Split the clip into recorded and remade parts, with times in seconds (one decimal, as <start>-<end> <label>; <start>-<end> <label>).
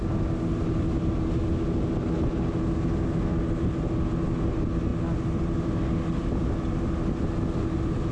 0.0-8.1 recorded